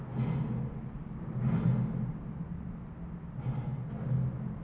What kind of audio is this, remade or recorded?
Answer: recorded